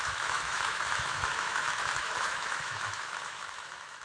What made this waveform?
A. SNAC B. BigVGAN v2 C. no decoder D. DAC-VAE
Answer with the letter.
D